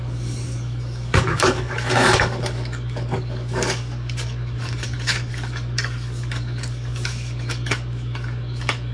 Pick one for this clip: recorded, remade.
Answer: remade